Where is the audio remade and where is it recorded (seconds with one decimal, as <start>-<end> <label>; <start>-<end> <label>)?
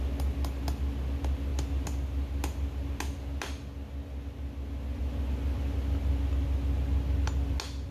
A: 0.0-7.9 recorded